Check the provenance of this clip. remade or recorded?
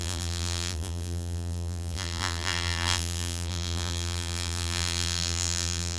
remade